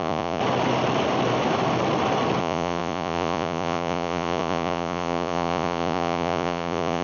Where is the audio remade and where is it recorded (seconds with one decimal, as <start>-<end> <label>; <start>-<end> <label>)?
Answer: 0.0-0.4 remade; 0.4-2.4 recorded; 2.4-7.0 remade